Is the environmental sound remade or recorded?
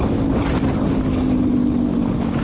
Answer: recorded